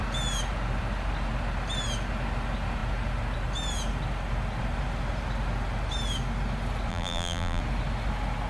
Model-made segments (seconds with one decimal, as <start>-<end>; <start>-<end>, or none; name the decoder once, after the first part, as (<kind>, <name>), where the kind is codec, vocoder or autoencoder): 6.9-7.6 (vocoder, BigVGAN v2)